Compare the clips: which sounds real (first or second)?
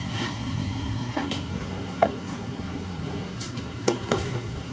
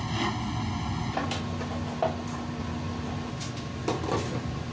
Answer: second